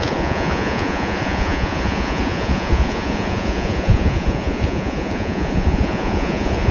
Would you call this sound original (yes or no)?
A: no